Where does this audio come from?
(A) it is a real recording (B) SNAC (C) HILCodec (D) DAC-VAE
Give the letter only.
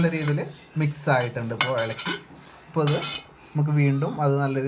A